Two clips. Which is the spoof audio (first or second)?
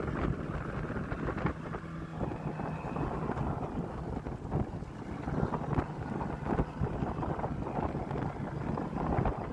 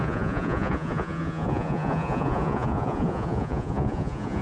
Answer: second